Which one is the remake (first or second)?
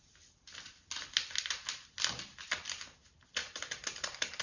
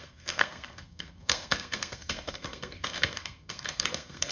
second